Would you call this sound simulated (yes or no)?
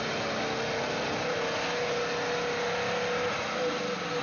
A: no